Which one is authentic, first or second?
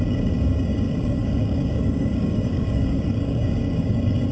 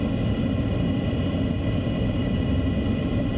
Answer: second